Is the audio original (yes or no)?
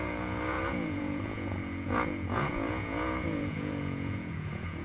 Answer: no